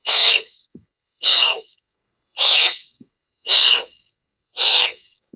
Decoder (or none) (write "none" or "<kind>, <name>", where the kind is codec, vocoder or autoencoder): codec, SNAC